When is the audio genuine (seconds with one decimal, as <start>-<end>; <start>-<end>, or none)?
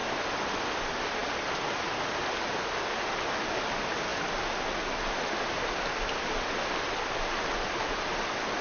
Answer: 0.0-8.6